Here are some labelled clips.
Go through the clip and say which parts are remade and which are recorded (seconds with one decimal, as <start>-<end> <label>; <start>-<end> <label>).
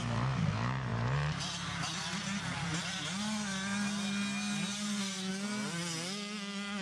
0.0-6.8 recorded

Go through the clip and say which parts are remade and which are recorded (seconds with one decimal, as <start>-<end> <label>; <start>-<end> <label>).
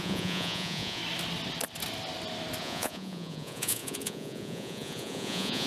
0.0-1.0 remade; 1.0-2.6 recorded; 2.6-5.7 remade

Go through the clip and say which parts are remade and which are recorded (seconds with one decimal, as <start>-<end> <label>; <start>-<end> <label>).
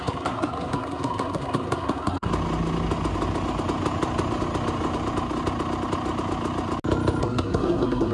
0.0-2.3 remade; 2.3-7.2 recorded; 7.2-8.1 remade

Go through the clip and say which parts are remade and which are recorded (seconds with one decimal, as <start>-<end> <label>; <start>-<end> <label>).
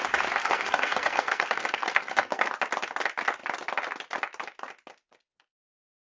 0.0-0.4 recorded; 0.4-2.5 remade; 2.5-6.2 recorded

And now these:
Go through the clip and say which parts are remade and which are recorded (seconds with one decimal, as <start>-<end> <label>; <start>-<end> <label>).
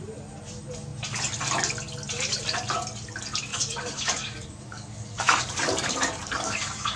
0.0-3.5 recorded; 3.5-7.0 remade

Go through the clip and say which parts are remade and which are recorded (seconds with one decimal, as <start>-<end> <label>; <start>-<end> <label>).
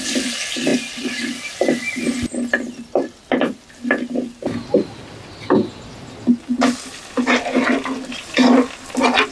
0.0-9.3 recorded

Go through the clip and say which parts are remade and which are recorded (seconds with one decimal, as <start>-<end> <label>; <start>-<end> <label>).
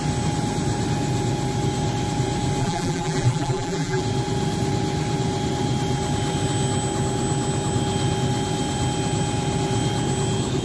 0.0-2.6 recorded; 2.6-4.0 remade; 4.0-10.6 recorded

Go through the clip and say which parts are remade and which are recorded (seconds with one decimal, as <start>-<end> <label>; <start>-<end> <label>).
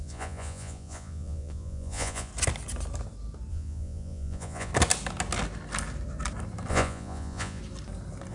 0.0-2.3 remade; 2.3-3.5 recorded; 3.5-4.7 remade; 4.7-6.7 recorded; 6.7-7.6 remade; 7.6-8.3 recorded